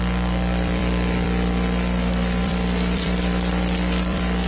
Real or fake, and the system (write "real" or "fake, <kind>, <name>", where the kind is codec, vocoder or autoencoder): fake, vocoder, BigVGAN v2